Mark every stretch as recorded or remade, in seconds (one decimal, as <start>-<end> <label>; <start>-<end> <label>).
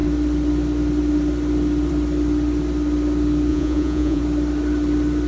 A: 0.0-3.5 recorded; 3.5-4.2 remade; 4.2-5.3 recorded